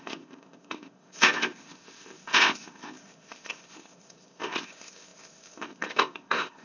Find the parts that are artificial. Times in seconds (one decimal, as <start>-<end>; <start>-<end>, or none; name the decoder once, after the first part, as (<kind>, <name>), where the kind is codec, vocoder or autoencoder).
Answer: 0.0-6.6 (codec, ZipCodec)